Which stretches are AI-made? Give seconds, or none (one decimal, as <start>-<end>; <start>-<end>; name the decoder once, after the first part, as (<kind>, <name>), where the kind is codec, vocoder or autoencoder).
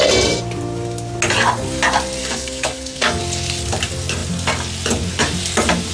2.2-3.2 (codec, SNAC)